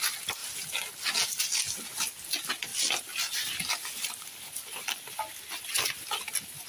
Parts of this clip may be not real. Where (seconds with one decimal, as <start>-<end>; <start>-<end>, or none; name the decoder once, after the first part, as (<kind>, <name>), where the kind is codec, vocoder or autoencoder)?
none